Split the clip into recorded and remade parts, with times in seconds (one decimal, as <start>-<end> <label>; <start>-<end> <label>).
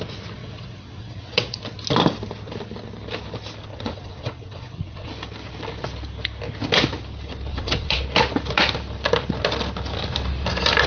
0.0-0.4 recorded; 0.4-1.6 remade; 1.6-3.7 recorded; 3.7-5.1 remade; 5.1-7.5 recorded; 7.5-8.0 remade; 8.0-10.9 recorded